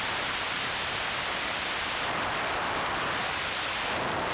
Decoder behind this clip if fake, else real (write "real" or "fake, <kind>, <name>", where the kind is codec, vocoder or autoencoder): real